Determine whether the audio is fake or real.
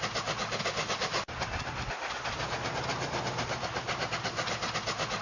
real